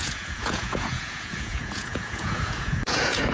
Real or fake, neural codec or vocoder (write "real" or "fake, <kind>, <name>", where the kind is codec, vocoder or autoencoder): fake, vocoder, Vocos